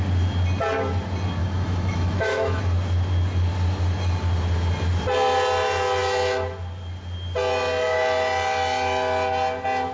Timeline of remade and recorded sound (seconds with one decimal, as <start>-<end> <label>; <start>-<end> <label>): 0.0-1.4 recorded; 1.4-2.6 remade; 2.6-9.9 recorded